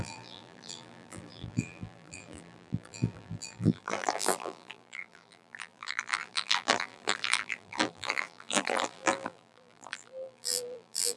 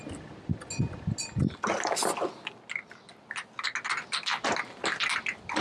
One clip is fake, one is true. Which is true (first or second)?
second